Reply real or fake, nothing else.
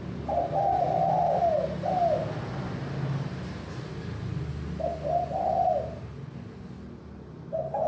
real